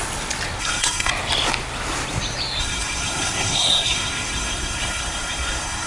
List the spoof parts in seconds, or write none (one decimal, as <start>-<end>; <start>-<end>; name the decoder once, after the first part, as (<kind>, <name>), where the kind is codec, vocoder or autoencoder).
0.6-1.1 (codec, SNAC); 2.6-5.9